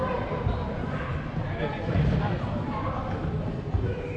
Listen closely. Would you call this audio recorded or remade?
recorded